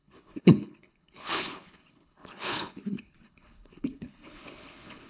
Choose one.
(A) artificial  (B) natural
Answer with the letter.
A